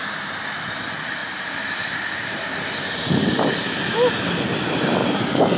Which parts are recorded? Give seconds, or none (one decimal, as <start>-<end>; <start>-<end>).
0.0-5.0